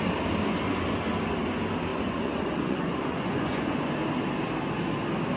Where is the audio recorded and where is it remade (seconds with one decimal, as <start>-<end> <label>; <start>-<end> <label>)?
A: 0.0-1.9 recorded; 1.9-3.9 remade; 3.9-5.4 recorded